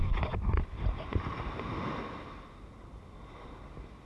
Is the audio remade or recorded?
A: recorded